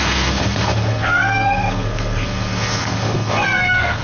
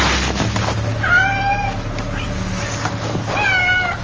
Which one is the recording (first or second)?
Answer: second